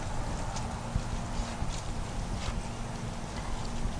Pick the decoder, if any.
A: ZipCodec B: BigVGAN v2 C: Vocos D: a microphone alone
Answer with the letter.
D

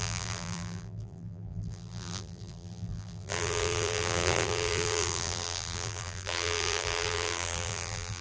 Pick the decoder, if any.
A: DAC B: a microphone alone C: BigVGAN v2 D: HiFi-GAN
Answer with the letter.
C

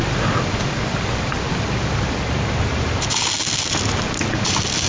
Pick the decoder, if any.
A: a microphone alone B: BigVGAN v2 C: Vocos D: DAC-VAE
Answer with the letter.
B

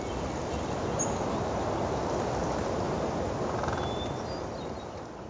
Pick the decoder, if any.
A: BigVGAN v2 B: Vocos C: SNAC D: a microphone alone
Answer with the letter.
D